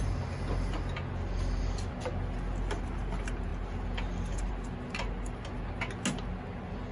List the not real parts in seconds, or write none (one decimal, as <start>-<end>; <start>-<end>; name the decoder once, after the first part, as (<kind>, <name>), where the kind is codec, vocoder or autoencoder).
none